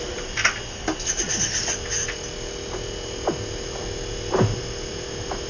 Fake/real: real